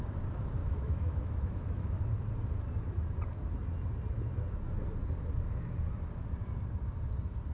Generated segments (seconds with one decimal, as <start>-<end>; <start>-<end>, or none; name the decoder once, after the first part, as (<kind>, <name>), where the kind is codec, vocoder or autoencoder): 0.6-2.0 (autoencoder, DAC-VAE)